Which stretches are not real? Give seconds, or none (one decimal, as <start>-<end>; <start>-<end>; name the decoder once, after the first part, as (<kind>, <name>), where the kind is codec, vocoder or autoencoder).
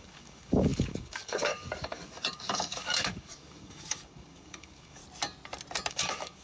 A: 0.0-5.0 (codec, DAC); 5.9-6.4